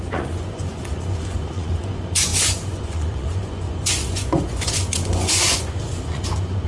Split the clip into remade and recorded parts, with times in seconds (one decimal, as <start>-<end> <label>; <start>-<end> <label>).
0.0-6.7 remade